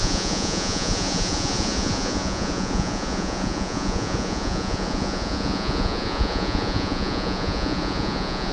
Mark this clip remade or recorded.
remade